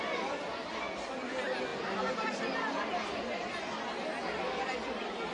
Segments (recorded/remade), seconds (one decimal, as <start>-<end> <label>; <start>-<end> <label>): 0.0-5.3 recorded